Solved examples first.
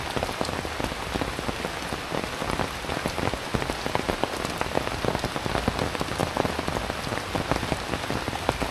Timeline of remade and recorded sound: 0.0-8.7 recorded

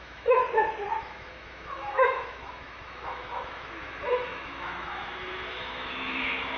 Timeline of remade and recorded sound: 0.0-0.4 remade; 0.4-1.0 recorded; 1.0-6.6 remade

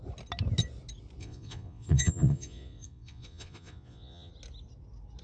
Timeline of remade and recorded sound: 0.0-1.2 recorded; 1.2-4.3 remade; 4.3-5.2 recorded

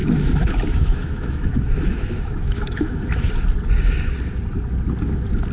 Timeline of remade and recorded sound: 0.0-3.3 remade; 3.3-5.5 recorded